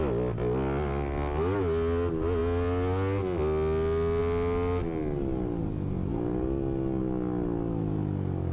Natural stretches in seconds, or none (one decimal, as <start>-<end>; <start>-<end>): 0.0-8.5